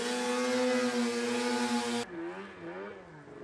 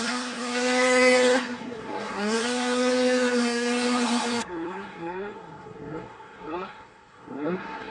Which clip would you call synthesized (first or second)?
second